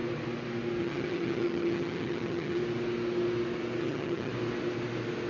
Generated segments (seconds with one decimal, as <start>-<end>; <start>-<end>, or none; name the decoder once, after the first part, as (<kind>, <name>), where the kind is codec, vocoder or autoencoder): 0.8-2.6 (vocoder, HiFi-GAN); 3.8-4.3